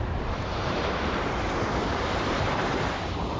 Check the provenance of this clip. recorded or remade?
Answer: remade